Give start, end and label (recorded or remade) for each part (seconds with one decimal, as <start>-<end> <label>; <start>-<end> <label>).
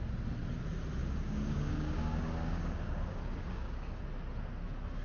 0.0-1.0 recorded; 1.0-4.0 remade; 4.0-5.0 recorded